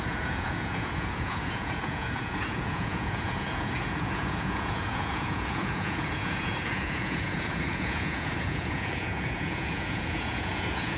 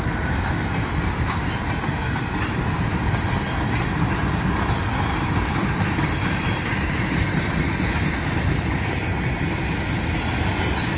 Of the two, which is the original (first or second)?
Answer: second